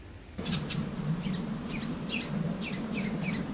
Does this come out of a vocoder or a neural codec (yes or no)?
no